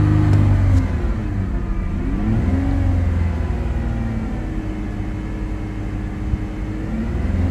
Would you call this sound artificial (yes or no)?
no